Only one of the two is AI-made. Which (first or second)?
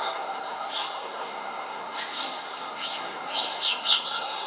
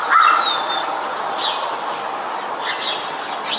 first